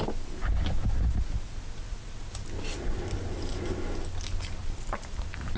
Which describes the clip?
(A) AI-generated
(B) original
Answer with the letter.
B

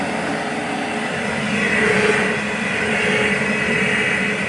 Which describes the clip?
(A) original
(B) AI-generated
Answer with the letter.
A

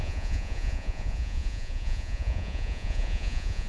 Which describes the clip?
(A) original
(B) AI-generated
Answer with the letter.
B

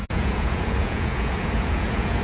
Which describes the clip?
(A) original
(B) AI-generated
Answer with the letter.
B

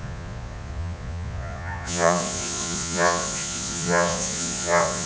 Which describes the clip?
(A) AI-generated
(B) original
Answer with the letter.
A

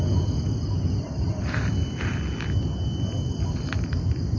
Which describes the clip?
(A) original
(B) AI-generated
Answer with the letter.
A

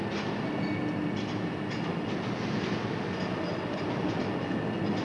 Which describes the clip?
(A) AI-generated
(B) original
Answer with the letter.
B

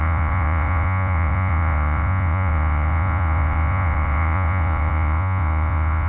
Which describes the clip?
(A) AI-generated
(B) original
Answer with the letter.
A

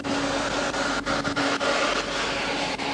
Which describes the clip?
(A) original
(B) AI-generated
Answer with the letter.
A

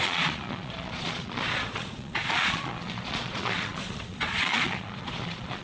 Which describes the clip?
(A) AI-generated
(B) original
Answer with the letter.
A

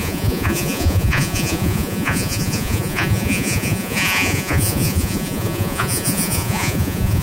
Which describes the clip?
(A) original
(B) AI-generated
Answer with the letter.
B